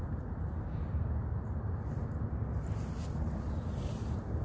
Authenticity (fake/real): real